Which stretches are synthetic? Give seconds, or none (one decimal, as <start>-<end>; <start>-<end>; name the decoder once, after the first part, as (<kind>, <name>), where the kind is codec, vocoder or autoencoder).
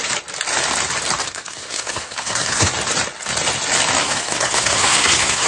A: 1.2-2.7 (codec, SNAC); 4.0-5.5